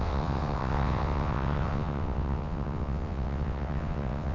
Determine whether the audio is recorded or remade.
remade